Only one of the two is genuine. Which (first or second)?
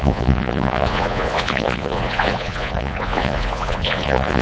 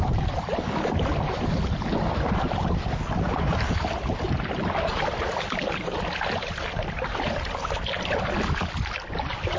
second